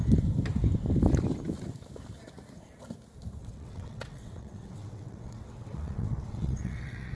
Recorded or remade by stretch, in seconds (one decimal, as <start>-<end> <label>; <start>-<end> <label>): 0.0-3.4 recorded; 3.4-7.1 remade